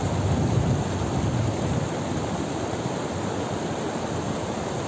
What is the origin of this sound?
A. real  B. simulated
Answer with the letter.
A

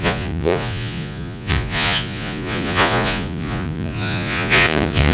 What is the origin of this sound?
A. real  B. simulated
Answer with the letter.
B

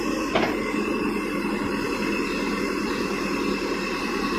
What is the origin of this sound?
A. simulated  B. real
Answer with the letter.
B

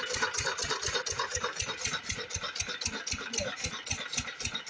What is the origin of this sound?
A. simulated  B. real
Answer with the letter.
B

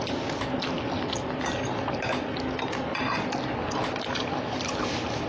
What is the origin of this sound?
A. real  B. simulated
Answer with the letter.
A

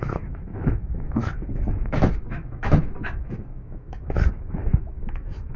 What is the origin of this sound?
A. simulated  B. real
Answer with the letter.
A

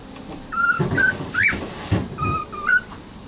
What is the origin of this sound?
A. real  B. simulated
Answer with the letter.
A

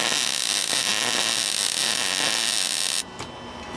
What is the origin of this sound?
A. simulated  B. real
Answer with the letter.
B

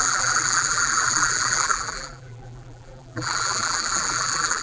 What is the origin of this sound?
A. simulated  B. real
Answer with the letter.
A